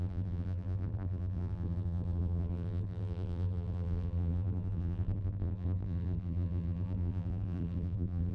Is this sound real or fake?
fake